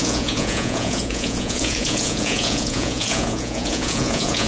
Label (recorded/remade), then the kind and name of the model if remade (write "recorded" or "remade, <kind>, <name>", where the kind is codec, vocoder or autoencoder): remade, vocoder, Vocos